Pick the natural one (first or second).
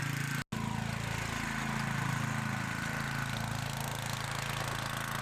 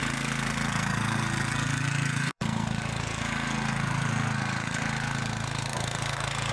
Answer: first